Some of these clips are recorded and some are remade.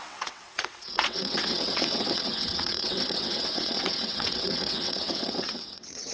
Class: remade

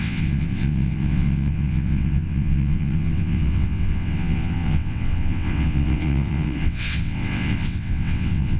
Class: remade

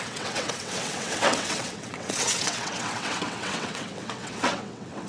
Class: remade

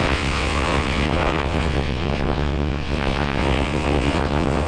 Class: remade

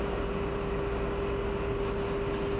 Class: recorded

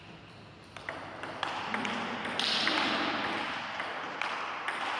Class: recorded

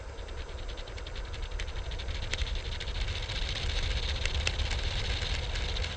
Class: recorded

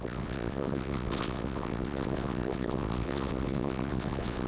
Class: remade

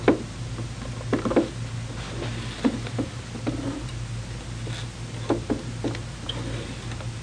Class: recorded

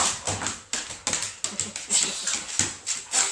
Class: recorded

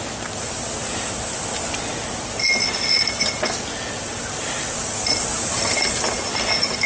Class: recorded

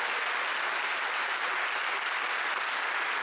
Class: recorded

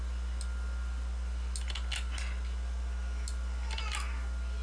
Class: recorded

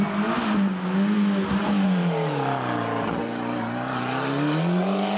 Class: recorded